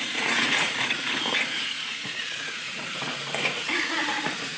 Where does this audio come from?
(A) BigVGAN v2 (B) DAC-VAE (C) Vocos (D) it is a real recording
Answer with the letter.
C